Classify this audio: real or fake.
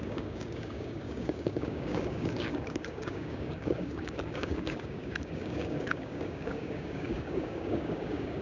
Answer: fake